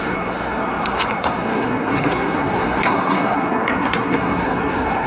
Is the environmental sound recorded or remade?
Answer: remade